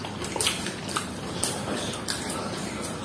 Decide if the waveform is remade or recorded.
remade